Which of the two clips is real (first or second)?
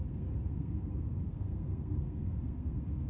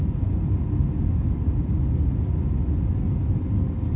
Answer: second